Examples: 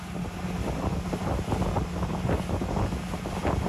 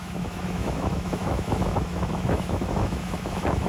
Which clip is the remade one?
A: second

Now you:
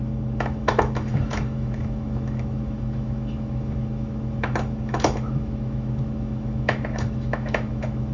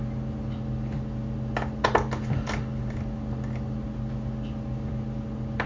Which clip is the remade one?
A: first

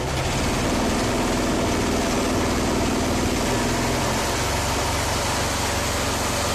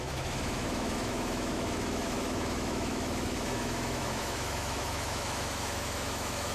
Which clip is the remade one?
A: second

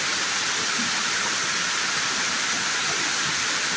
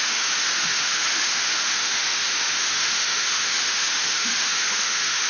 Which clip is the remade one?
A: second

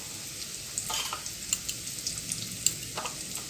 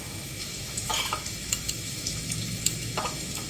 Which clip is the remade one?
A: second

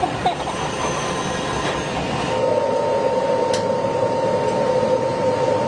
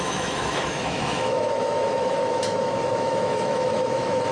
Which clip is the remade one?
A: second